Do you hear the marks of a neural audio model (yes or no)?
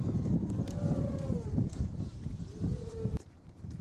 yes